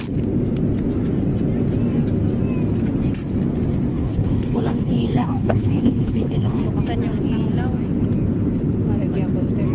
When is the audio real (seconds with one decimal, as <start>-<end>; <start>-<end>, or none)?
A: 0.0-3.9; 6.6-9.7